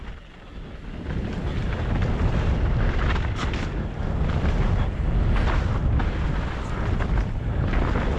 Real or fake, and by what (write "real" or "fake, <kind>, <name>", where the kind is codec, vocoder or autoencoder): real